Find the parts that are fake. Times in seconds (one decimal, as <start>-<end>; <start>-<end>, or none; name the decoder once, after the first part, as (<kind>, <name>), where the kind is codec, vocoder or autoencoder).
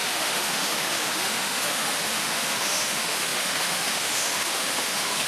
0.0-5.3 (autoencoder, DAC-VAE)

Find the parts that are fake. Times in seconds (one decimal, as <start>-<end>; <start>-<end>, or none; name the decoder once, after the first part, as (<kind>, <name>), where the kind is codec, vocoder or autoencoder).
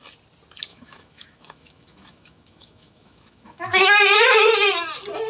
0.7-3.9 (autoencoder, DAC-VAE)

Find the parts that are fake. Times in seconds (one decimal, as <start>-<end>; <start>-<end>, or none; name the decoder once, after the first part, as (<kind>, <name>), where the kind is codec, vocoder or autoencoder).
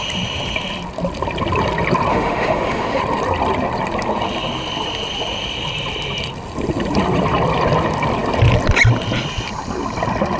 2.1-3.0 (autoencoder, DAC-VAE)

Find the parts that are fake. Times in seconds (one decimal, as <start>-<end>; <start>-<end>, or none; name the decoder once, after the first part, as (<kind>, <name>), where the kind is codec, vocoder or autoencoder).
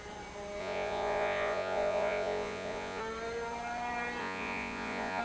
0.6-3.0 (vocoder, Vocos); 4.2-5.2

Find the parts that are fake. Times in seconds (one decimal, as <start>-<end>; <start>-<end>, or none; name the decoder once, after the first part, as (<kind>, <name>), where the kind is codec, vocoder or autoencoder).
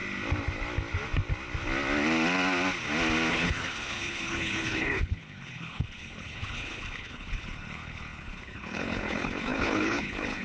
3.3-10.4 (codec, HILCodec)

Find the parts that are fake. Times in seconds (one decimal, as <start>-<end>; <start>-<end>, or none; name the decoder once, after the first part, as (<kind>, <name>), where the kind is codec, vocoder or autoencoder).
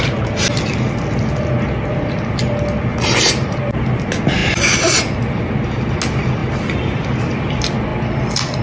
2.9-4.0 (vocoder, BigVGAN v2); 6.4-7.4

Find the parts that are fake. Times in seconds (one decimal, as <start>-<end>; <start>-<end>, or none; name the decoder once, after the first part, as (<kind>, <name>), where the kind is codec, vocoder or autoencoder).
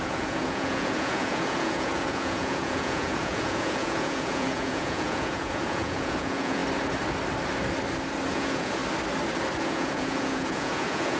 0.0-6.6 (vocoder, Vocos); 8.3-8.8; 9.6-11.2